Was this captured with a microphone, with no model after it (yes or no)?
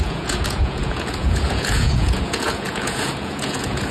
no